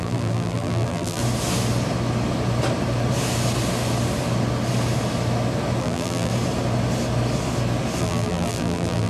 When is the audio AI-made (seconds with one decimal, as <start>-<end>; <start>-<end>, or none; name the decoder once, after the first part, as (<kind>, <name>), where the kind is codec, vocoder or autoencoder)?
0.0-1.2 (vocoder, BigVGAN v2); 5.8-6.3; 8.0-9.1